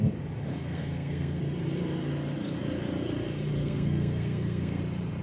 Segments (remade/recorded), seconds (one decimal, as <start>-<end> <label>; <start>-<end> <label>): 0.0-0.5 recorded; 0.5-1.4 remade; 1.4-3.6 recorded; 3.6-4.8 remade; 4.8-5.2 recorded